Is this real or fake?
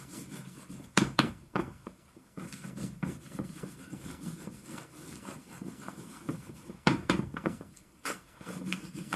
fake